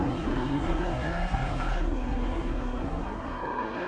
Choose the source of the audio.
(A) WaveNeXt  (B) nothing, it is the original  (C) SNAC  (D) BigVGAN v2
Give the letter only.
C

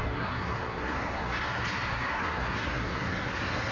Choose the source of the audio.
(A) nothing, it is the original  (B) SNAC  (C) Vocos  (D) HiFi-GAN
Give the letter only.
B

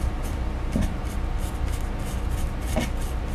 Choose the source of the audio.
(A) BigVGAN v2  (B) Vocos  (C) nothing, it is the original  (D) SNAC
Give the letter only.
C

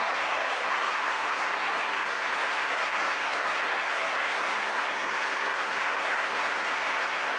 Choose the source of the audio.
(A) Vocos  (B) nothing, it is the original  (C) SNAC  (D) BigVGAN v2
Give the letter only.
C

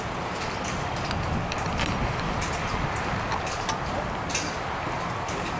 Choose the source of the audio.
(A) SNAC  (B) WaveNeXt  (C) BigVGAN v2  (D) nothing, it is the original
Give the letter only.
D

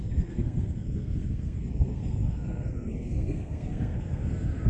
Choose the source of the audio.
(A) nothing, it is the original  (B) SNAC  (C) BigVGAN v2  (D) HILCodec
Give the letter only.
B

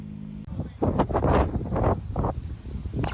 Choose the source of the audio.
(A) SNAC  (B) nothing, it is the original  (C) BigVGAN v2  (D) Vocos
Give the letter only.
B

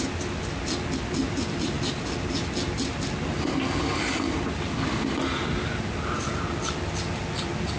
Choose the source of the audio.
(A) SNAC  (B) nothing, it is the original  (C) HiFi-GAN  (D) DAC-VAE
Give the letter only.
B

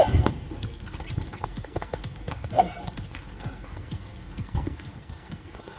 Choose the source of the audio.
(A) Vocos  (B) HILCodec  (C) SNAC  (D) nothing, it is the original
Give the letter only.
C